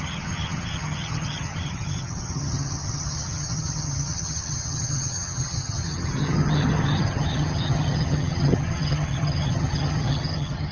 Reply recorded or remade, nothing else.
remade